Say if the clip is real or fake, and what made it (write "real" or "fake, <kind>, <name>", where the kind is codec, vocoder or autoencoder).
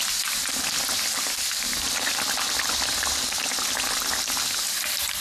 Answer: real